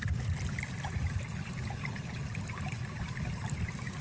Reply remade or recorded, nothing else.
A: recorded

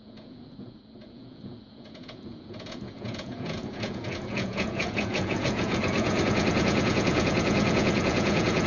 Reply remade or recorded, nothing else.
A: remade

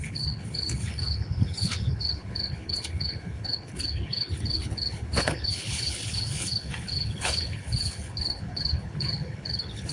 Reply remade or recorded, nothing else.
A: remade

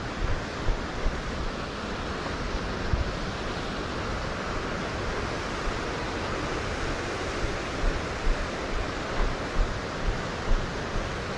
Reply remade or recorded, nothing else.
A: recorded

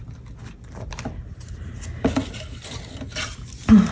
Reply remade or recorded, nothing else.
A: recorded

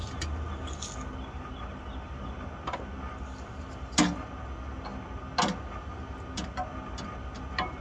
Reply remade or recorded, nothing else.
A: recorded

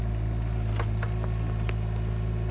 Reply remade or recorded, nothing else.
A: recorded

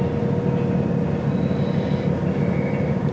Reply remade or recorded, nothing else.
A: recorded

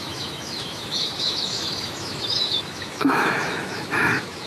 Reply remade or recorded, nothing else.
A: remade